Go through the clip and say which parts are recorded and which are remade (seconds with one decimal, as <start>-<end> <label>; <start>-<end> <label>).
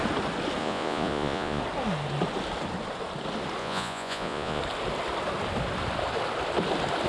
0.0-0.6 recorded; 0.6-1.6 remade; 1.6-3.6 recorded; 3.6-4.6 remade; 4.6-7.1 recorded